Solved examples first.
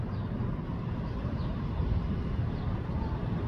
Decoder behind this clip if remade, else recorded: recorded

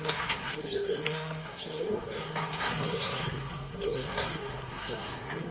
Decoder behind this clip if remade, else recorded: remade, codec, SNAC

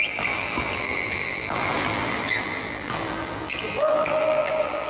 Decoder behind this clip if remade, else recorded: remade, vocoder, BigVGAN v2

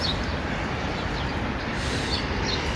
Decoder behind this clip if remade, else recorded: recorded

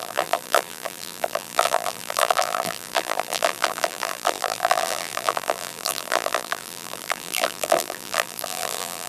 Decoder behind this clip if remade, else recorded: remade, vocoder, BigVGAN v2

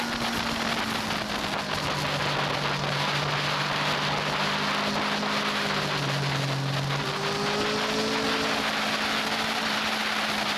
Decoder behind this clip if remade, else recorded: recorded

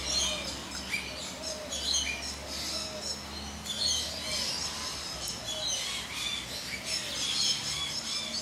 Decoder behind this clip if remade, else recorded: recorded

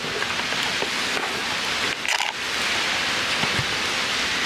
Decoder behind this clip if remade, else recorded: recorded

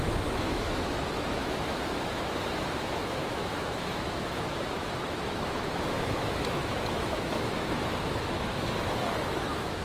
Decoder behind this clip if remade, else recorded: remade, autoencoder, DAC-VAE